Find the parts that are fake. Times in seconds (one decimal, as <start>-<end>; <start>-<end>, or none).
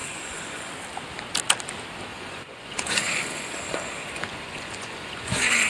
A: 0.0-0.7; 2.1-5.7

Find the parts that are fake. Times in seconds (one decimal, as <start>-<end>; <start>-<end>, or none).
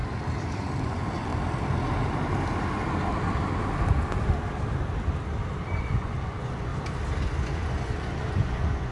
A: 0.8-1.3; 5.8-6.7; 7.2-8.9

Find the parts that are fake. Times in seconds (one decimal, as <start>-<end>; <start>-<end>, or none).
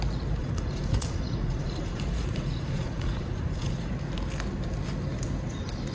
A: 0.4-3.9